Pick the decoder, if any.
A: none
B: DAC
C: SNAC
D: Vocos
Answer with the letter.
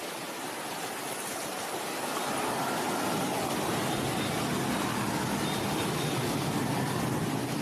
A